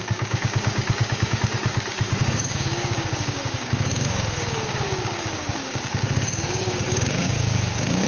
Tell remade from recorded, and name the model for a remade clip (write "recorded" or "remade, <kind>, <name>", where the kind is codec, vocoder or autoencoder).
remade, codec, DAC